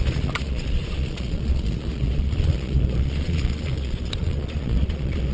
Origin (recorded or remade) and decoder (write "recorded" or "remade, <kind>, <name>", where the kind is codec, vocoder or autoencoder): remade, vocoder, Vocos